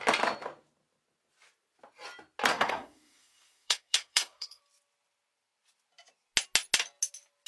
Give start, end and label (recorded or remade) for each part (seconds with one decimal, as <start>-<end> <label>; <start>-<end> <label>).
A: 0.0-2.5 recorded; 2.5-4.6 remade; 4.6-7.5 recorded